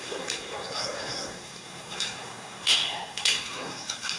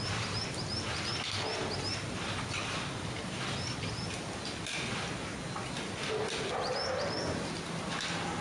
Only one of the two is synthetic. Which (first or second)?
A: first